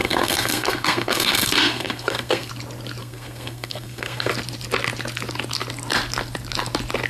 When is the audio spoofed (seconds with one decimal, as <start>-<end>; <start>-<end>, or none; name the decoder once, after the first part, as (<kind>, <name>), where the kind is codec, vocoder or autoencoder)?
0.0-2.5 (codec, SNAC); 3.0-4.3